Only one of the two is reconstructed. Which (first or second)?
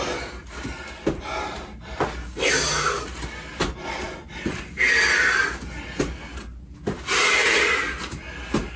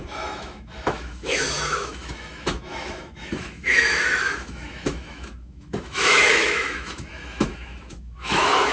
second